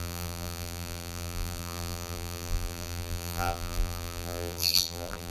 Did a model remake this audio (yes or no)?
yes